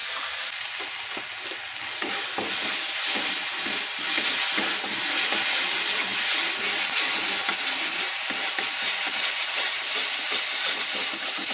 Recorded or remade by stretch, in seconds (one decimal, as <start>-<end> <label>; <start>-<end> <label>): 0.0-11.5 recorded

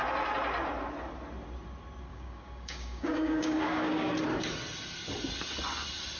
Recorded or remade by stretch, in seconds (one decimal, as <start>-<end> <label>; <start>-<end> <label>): 0.0-2.1 recorded; 2.1-4.1 remade; 4.1-6.2 recorded